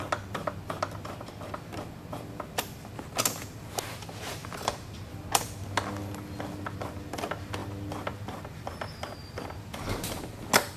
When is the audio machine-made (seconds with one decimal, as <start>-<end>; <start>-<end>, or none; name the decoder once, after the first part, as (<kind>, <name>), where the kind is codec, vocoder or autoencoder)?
4.4-5.0 (vocoder, BigVGAN v2)